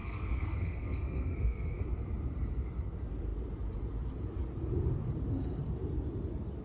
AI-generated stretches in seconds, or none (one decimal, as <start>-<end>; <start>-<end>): 0.0-1.8

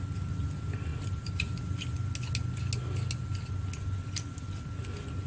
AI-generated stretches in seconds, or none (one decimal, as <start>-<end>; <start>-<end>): none

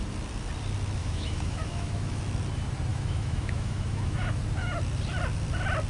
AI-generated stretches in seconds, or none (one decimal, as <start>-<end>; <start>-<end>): 1.0-2.2; 2.9-4.4

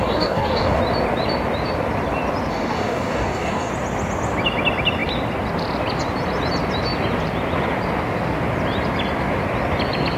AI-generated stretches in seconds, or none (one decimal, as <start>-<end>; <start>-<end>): 0.0-0.8; 2.5-3.7

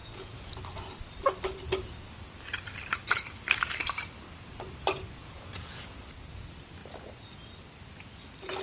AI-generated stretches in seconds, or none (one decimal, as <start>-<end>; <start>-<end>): 0.0-0.6; 5.2-6.0

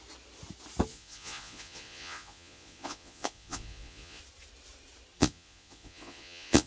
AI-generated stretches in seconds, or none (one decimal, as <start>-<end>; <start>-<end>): 0.9-4.2; 5.2-6.7